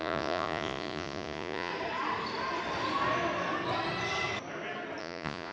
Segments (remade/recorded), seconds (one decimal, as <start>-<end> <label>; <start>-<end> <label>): 0.0-1.7 remade; 1.7-5.0 recorded; 5.0-5.5 remade